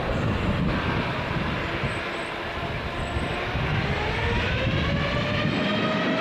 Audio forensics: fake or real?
real